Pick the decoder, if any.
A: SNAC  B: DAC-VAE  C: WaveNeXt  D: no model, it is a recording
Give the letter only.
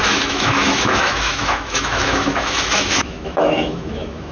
B